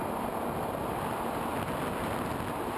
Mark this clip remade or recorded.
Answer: recorded